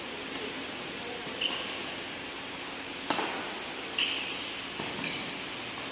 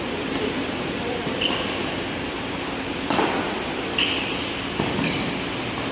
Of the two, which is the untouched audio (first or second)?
first